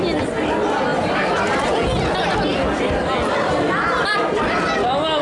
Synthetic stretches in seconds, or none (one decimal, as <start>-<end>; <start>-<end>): 0.9-1.6; 2.5-4.6